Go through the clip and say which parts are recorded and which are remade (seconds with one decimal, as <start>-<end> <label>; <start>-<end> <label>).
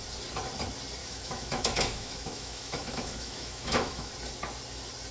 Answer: 0.0-1.0 recorded; 1.0-4.1 remade; 4.1-5.1 recorded